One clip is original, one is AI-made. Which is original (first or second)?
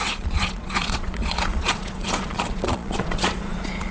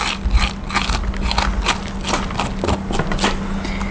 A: second